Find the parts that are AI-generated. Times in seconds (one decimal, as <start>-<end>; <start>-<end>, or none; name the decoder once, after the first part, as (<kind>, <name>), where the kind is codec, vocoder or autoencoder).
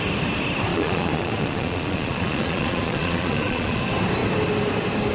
0.7-3.8 (vocoder, Vocos)